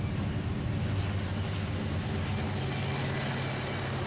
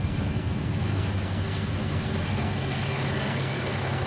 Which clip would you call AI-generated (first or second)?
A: second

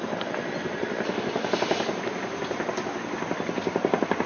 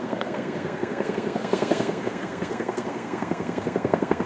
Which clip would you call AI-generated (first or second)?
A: second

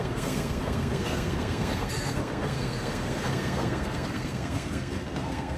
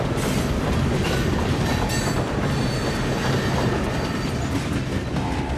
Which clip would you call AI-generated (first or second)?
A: first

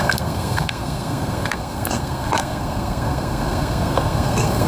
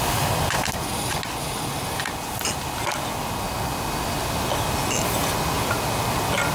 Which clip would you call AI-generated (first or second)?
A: first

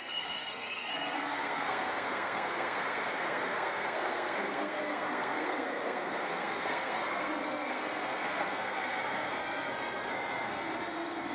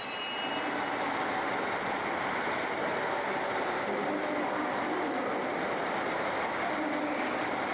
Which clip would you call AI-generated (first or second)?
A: first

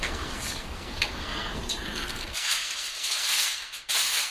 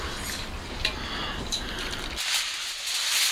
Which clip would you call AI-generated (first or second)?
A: first